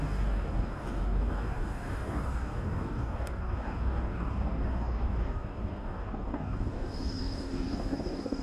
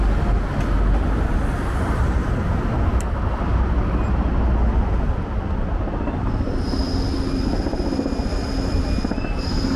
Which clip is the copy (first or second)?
first